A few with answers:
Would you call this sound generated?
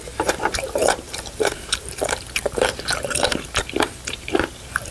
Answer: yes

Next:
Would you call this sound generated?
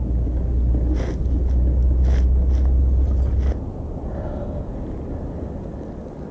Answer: no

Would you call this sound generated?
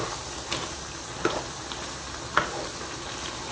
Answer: no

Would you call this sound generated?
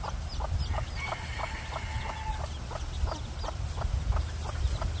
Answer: no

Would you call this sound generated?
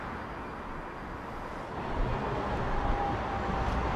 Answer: no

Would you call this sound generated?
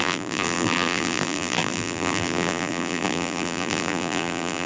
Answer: yes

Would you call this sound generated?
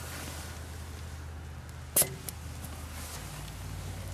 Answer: no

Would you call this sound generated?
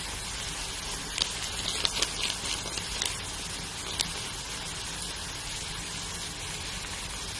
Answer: no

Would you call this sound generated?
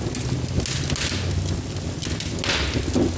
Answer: no